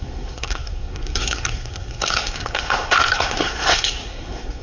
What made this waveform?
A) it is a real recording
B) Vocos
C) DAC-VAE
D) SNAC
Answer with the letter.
D